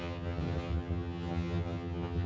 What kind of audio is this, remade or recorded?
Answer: remade